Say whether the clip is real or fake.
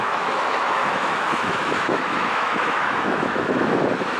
fake